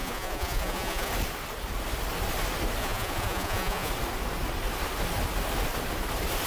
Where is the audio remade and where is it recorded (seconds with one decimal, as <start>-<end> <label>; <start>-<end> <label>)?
0.0-1.1 remade; 1.1-2.8 recorded; 2.8-3.9 remade; 3.9-6.5 recorded